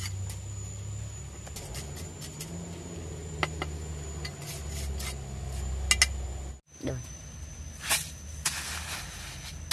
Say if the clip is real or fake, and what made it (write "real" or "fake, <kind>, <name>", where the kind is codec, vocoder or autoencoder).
real